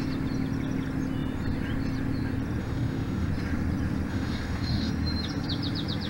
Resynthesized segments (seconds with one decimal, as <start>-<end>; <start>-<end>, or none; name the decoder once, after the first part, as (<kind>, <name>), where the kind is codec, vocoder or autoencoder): 2.6-3.3 (autoencoder, DAC-VAE); 4.1-4.9